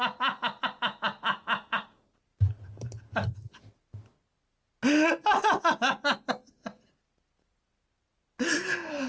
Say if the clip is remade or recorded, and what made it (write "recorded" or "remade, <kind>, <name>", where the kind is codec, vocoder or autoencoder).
recorded